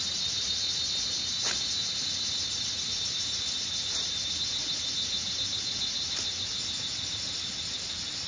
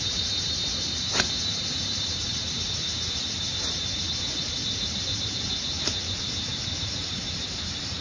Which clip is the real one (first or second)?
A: first